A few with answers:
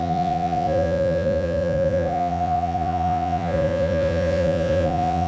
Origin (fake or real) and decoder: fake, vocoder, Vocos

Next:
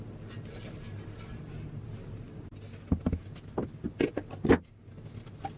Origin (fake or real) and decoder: real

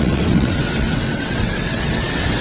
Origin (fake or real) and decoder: fake, vocoder, WaveNeXt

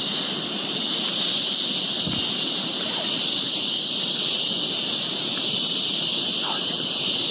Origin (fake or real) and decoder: real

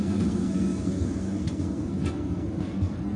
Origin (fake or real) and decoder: fake, codec, SNAC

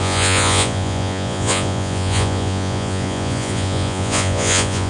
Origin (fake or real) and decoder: fake, vocoder, Vocos